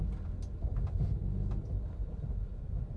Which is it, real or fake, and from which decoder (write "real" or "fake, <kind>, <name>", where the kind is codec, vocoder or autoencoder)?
real